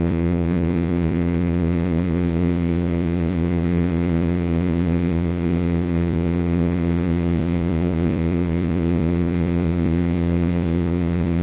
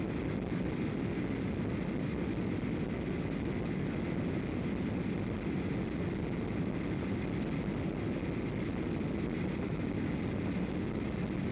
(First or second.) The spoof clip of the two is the first